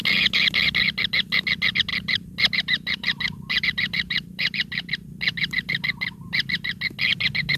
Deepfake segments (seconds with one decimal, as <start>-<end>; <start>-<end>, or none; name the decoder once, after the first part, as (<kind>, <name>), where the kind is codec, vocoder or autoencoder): 1.9-4.9 (vocoder, BigVGAN v2)